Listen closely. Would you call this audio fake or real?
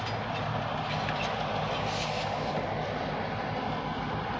real